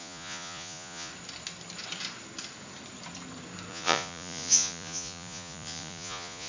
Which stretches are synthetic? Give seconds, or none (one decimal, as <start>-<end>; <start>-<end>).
0.0-1.1; 3.7-6.5